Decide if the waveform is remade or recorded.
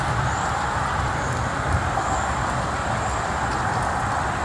recorded